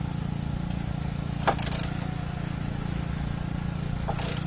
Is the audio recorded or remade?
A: recorded